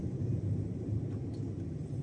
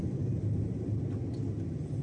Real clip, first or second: second